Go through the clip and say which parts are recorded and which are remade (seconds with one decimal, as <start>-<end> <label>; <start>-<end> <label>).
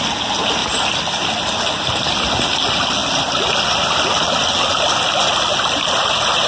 0.0-6.5 recorded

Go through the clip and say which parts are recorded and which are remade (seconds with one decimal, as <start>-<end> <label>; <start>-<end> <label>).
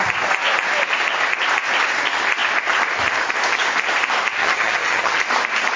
0.0-4.4 recorded; 4.4-5.2 remade; 5.2-5.8 recorded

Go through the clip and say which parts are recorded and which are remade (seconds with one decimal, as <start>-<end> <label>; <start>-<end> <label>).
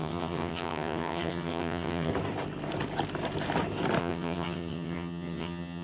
0.0-2.1 remade; 2.1-4.0 recorded; 4.0-5.8 remade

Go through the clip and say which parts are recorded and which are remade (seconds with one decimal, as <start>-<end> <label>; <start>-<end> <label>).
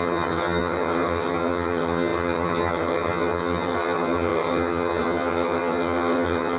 0.0-6.6 remade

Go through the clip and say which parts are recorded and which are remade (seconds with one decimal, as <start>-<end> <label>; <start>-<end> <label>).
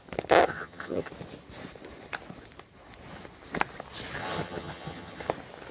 0.0-0.4 recorded; 0.4-1.1 remade; 1.1-4.2 recorded; 4.2-5.3 remade; 5.3-5.7 recorded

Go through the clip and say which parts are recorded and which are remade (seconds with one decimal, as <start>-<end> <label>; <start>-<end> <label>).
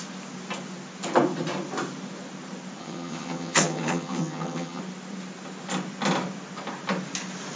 0.0-2.8 recorded; 2.8-4.8 remade; 4.8-7.6 recorded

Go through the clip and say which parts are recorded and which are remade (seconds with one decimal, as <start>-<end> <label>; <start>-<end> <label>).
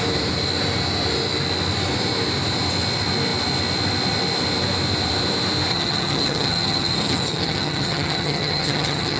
0.0-5.7 recorded; 5.7-9.2 remade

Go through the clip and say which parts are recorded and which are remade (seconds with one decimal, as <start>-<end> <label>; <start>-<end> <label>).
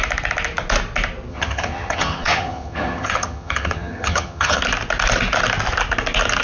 0.0-1.3 recorded; 1.3-4.6 remade; 4.6-6.4 recorded